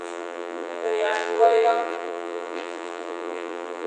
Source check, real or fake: fake